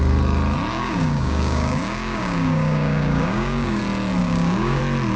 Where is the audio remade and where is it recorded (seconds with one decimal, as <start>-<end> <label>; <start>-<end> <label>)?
0.0-0.7 recorded; 0.7-3.8 remade; 3.8-4.2 recorded; 4.2-4.8 remade; 4.8-5.2 recorded